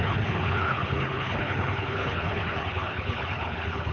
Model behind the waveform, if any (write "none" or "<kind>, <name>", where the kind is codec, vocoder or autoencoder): codec, HILCodec